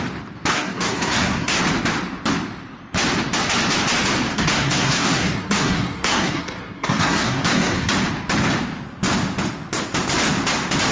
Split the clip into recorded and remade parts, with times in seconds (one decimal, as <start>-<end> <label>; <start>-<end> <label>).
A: 0.0-0.5 recorded; 0.5-1.6 remade; 1.6-4.3 recorded; 4.3-7.9 remade; 7.9-10.9 recorded